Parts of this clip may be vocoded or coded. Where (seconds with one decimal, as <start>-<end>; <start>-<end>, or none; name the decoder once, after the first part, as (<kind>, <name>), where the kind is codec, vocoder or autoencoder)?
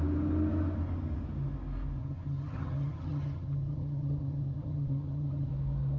2.0-5.5 (vocoder, HiFi-GAN)